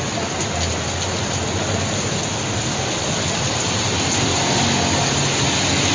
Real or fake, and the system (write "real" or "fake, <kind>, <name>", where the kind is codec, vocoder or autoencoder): real